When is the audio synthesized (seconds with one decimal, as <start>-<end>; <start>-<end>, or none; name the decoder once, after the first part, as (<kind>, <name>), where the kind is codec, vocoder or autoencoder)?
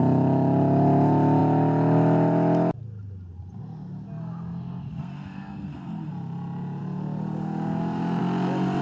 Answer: 5.0-6.1 (codec, SNAC)